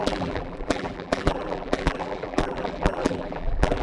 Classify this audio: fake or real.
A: fake